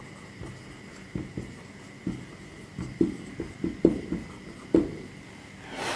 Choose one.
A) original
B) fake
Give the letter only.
A